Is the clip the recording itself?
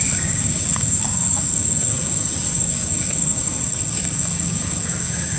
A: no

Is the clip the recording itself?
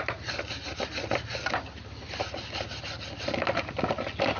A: yes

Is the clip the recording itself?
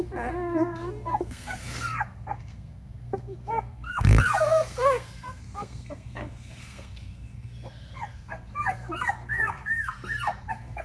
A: no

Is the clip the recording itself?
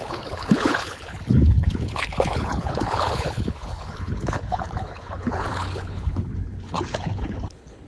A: no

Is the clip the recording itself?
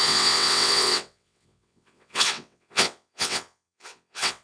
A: no